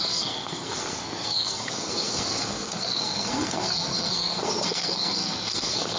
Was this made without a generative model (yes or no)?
no